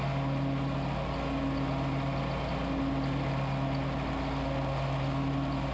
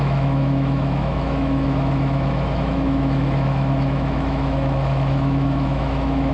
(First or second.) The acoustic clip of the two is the first